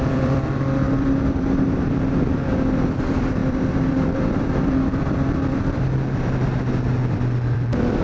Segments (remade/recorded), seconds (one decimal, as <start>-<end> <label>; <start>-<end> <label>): 0.0-5.9 remade; 5.9-6.6 recorded; 6.6-8.0 remade